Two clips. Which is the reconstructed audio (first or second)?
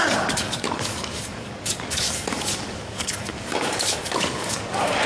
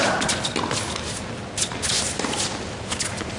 first